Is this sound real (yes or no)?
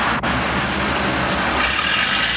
yes